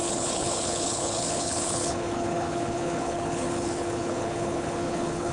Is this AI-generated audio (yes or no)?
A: yes